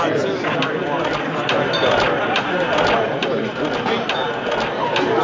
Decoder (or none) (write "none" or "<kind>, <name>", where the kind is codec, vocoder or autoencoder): none